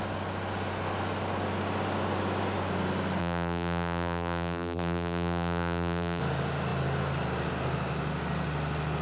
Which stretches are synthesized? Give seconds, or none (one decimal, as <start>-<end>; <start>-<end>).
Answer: 3.2-6.2